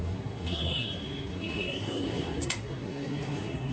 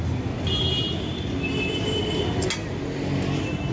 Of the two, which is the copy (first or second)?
first